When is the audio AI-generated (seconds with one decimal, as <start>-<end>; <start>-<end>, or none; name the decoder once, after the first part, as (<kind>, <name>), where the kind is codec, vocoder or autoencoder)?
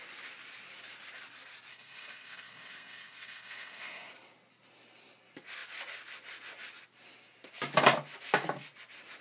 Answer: 1.7-4.1 (codec, SNAC)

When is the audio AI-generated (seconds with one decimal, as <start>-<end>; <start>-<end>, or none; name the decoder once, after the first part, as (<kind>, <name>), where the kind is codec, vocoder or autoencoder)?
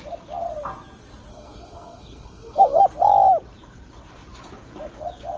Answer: 1.3-2.8 (codec, SNAC)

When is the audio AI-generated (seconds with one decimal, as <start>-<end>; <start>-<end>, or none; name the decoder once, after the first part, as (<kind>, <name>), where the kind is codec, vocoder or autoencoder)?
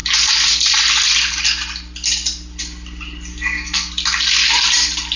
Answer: 3.3-3.9 (codec, SNAC)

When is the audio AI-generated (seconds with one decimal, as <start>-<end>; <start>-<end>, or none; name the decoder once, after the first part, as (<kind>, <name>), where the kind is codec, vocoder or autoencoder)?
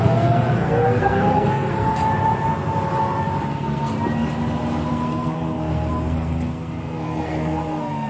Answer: 0.0-2.0 (codec, SNAC); 3.5-3.9; 4.9-8.1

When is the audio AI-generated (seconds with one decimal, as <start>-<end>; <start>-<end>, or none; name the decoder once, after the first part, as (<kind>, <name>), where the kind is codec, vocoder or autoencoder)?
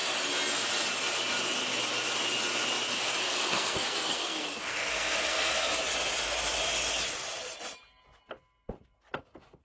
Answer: 3.2-5.7 (codec, SNAC)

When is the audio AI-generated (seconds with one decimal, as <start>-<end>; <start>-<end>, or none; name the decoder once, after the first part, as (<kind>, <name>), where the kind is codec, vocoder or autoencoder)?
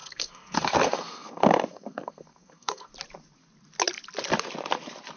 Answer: 0.0-2.9 (codec, SNAC)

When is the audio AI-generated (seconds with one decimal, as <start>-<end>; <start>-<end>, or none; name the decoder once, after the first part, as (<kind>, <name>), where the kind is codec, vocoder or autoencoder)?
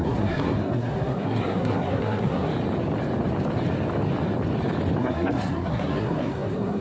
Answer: 0.0-2.5 (codec, SNAC); 5.0-6.8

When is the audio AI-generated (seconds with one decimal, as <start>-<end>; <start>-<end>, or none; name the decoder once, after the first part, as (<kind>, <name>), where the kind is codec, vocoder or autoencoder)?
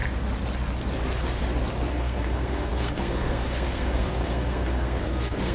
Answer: 1.9-5.5 (codec, SNAC)